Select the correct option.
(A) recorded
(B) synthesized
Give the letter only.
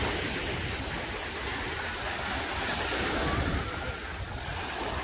A